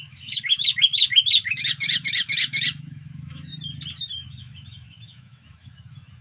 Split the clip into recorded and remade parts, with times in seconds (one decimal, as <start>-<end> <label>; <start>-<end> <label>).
0.0-3.5 remade; 3.5-4.1 recorded; 4.1-6.2 remade